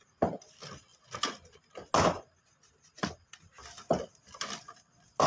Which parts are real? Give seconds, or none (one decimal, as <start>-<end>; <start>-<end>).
0.0-5.3